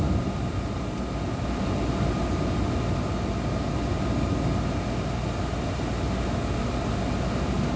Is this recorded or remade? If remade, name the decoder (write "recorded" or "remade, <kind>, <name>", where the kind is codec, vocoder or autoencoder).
recorded